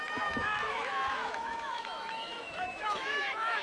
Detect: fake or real fake